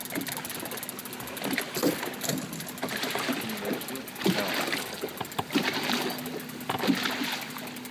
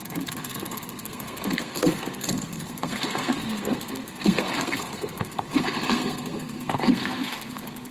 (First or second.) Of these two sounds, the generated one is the second